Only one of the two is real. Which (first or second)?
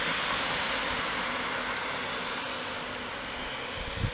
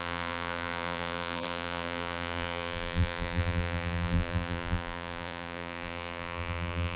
first